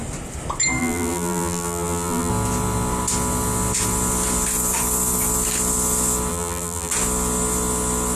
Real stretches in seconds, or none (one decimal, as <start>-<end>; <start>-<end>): 0.0-0.8; 2.3-6.3; 6.9-8.1